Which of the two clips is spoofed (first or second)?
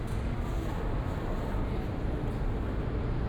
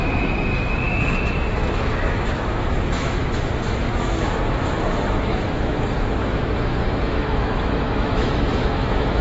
second